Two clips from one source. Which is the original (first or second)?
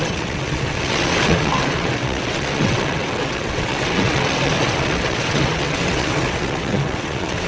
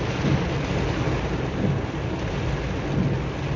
second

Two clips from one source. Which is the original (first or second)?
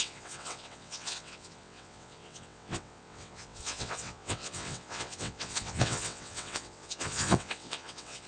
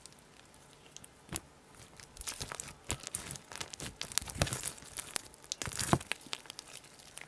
second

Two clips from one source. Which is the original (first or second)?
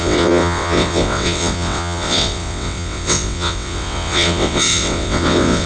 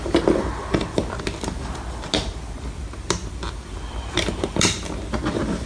second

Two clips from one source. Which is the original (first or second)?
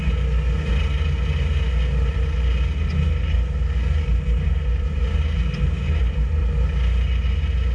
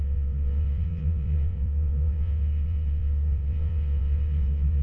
first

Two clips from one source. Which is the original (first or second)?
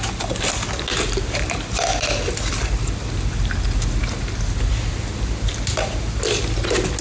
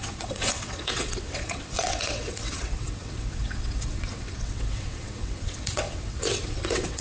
first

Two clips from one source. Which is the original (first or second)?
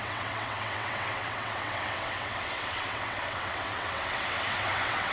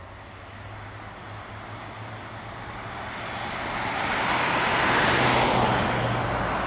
second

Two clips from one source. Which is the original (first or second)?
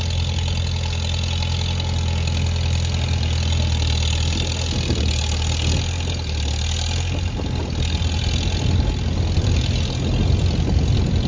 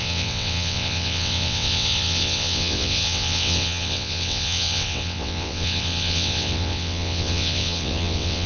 first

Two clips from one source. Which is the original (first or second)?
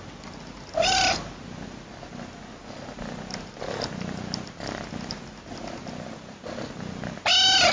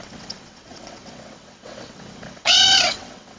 first